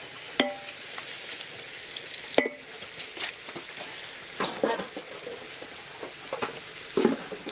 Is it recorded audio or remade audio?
recorded